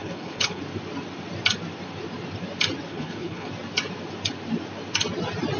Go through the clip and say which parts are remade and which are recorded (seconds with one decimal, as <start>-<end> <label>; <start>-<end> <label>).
0.0-0.6 remade; 0.6-2.9 recorded; 2.9-3.5 remade; 3.5-5.6 recorded